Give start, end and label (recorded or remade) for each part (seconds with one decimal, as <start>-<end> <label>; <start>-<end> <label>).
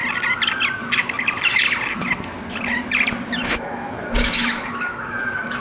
0.0-3.4 recorded; 3.4-5.6 remade